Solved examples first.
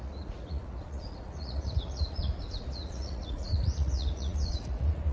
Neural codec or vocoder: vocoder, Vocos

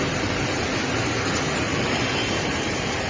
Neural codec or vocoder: none